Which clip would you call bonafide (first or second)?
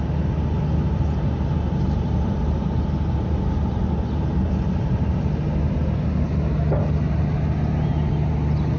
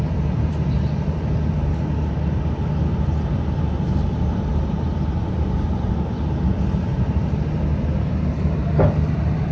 first